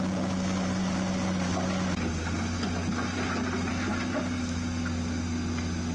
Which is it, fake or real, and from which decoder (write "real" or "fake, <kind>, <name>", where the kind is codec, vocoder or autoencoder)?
real